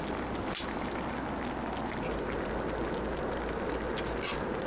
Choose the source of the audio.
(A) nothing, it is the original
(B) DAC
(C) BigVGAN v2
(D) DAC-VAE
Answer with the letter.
A